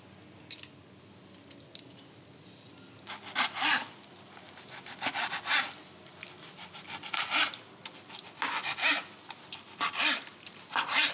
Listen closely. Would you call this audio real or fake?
real